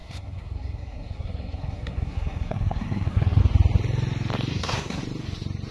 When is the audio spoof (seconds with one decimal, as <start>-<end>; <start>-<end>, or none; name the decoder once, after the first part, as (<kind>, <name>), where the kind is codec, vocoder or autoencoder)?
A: 0.0-3.4 (codec, SNAC); 4.5-5.0